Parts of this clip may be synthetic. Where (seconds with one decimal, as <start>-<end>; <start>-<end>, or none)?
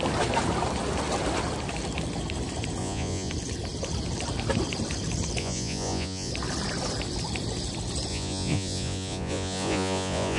2.8-3.3; 5.4-6.3; 8.1-10.4